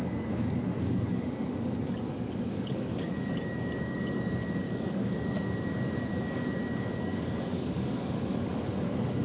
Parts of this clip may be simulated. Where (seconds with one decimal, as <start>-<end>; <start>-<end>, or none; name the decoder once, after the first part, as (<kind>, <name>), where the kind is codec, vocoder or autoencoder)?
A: 0.0-9.2 (codec, DAC)

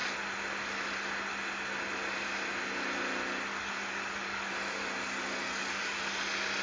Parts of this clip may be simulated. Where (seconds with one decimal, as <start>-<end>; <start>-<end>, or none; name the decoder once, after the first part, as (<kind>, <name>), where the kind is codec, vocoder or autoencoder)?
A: 3.5-4.5 (codec, DAC); 5.4-6.1

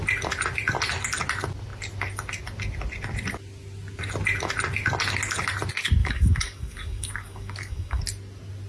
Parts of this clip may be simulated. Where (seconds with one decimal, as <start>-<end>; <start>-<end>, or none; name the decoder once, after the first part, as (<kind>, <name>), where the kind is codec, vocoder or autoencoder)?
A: 6.0-8.0 (codec, DAC)

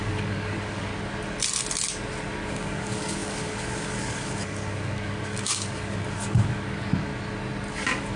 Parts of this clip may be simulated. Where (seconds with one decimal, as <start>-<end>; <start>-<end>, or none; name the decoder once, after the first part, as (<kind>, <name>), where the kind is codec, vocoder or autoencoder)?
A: 0.0-0.9 (codec, DAC); 2.5-7.1; 7.7-8.2

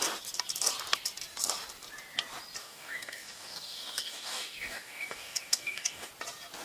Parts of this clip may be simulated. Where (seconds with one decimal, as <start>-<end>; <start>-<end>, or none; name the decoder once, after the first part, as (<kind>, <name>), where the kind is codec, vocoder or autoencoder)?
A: 2.6-6.1 (codec, DAC)

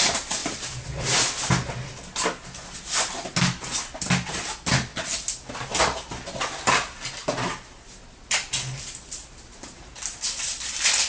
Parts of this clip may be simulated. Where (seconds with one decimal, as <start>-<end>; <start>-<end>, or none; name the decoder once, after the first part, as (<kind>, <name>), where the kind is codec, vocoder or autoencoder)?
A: none

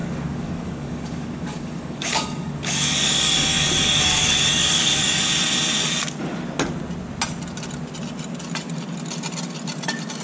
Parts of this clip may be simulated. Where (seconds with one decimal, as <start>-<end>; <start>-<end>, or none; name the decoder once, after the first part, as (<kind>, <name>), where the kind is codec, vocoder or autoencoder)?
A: 0.0-5.2 (codec, DAC)